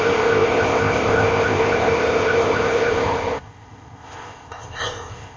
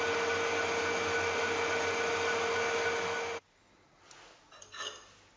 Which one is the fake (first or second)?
first